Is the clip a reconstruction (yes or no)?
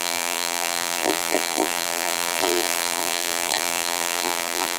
yes